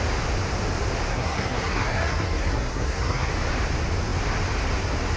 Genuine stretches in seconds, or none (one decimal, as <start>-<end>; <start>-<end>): 0.0-1.1; 3.3-5.2